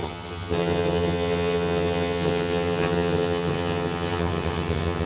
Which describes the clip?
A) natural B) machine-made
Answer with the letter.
B